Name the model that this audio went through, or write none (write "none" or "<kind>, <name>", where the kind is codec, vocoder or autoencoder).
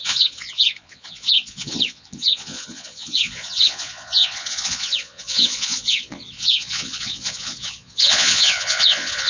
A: vocoder, Vocos